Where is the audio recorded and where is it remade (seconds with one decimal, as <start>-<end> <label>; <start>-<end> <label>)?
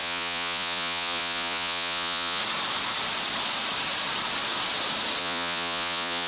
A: 0.0-2.4 remade; 2.4-5.2 recorded; 5.2-6.3 remade